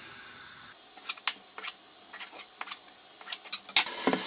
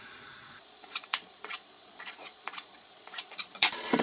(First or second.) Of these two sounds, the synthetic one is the second